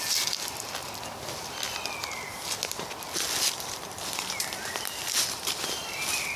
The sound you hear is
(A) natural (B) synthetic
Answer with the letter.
A